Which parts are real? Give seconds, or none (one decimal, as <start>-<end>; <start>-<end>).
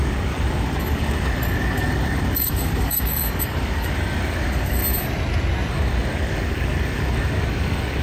4.8-5.7